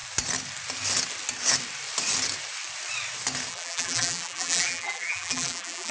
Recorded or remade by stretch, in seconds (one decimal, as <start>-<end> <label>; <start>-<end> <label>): 0.0-3.5 recorded; 3.5-5.9 remade